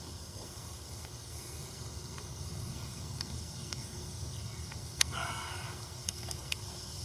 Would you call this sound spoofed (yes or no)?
yes